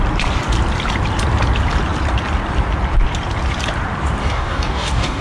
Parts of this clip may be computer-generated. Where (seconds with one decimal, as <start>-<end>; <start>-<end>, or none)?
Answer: 4.2-5.2